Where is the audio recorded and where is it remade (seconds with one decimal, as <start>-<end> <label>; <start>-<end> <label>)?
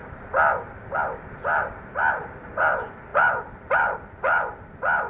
0.0-5.1 recorded